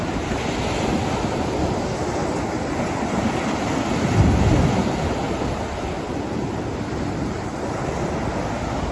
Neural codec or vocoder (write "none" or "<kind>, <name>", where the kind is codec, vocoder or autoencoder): none